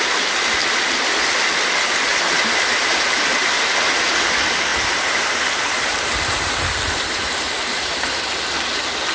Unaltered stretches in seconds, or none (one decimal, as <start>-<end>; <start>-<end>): 0.0-2.1; 4.0-4.7; 8.3-9.1